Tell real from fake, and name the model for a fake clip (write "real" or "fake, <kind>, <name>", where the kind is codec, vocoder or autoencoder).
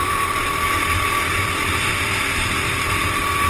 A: real